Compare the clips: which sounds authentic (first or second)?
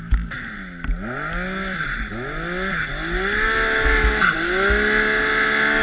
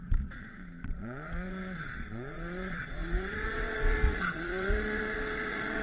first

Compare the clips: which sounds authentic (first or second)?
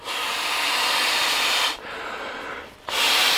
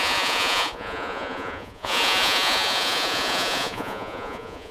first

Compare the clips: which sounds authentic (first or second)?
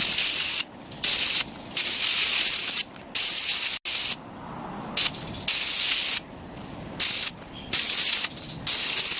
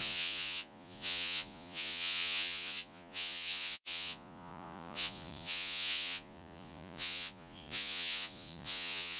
first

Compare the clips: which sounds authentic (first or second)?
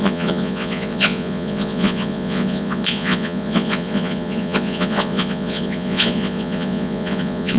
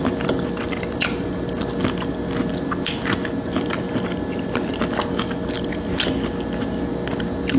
second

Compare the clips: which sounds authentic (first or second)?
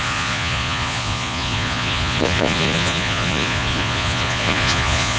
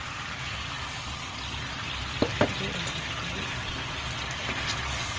second